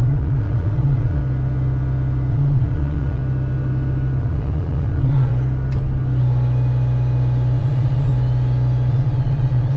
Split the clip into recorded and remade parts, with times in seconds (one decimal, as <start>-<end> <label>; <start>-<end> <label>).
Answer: 0.0-1.2 remade; 1.2-2.3 recorded; 2.3-3.2 remade; 3.2-4.2 recorded; 4.2-5.3 remade; 5.3-7.6 recorded; 7.6-8.1 remade; 8.1-8.9 recorded; 8.9-9.8 remade